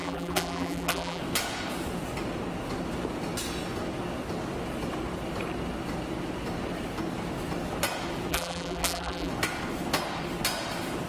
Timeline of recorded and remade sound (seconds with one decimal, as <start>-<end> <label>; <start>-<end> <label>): 0.0-1.2 remade; 1.2-8.3 recorded; 8.3-9.3 remade; 9.3-11.1 recorded